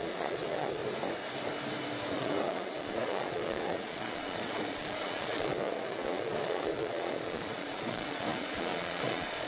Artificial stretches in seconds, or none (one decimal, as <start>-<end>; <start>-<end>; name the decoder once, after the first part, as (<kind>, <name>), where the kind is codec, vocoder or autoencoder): 0.0-0.8 (vocoder, Vocos); 2.1-9.5